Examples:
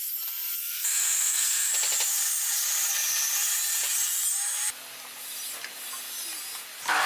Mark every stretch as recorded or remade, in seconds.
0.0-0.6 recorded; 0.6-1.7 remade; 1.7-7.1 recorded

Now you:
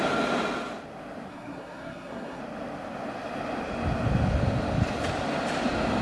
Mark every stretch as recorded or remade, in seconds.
0.0-1.3 recorded; 1.3-2.4 remade; 2.4-6.0 recorded

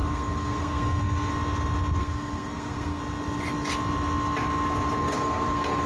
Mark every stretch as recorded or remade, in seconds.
0.0-1.3 remade; 1.3-2.0 recorded; 2.0-3.0 remade; 3.0-5.0 recorded; 5.0-5.9 remade

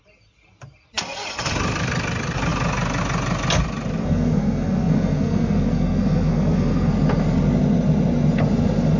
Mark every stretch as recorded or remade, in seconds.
0.0-4.0 recorded; 4.0-6.9 remade; 6.9-9.0 recorded

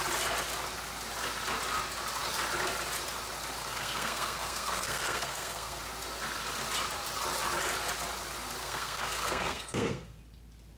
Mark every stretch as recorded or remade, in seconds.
0.0-3.6 recorded; 3.6-5.8 remade; 5.8-8.6 recorded; 8.6-10.2 remade; 10.2-10.8 recorded

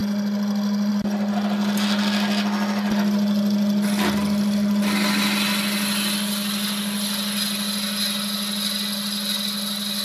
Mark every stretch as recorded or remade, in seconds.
0.0-10.0 recorded

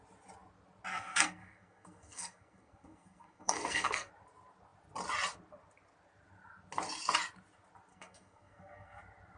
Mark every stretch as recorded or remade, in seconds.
0.0-0.9 recorded; 0.9-4.1 remade; 4.1-7.9 recorded; 7.9-9.0 remade; 9.0-9.4 recorded